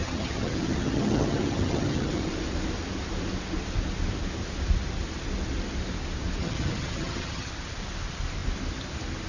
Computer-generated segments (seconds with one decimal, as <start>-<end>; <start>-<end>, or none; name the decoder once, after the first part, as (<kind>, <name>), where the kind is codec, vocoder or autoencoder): 0.0-2.3 (vocoder, HiFi-GAN); 6.4-7.5